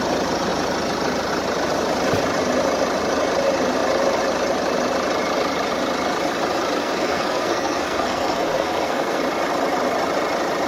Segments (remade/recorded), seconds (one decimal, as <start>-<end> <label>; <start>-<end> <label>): 0.0-6.8 recorded; 6.8-9.2 remade; 9.2-10.7 recorded